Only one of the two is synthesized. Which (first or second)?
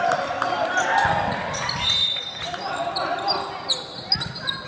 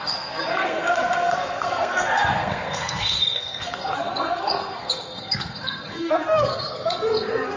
second